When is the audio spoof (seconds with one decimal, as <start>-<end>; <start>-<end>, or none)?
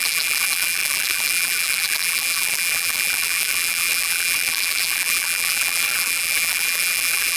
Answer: 0.0-7.4